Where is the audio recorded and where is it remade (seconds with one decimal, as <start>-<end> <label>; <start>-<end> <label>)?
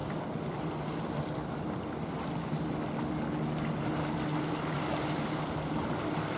0.0-6.4 recorded